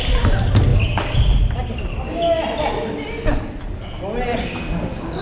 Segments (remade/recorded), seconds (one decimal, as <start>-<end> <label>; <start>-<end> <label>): 0.0-5.2 recorded